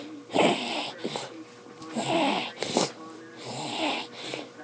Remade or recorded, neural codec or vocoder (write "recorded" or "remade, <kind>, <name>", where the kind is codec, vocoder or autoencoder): recorded